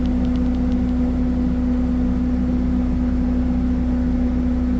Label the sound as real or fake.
real